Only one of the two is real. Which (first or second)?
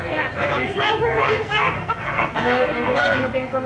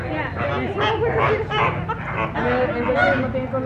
second